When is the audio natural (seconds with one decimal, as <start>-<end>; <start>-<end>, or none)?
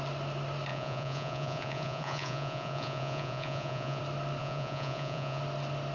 0.0-0.7; 4.0-4.4; 5.4-5.9